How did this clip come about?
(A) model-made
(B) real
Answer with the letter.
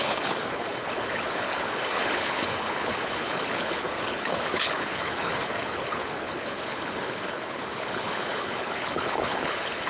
A